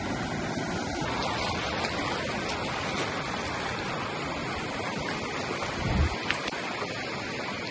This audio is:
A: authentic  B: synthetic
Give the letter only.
A